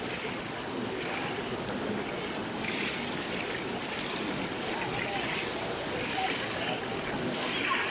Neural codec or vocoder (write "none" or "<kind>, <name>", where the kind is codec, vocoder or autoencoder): none